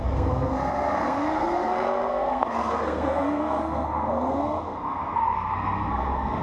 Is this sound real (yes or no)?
no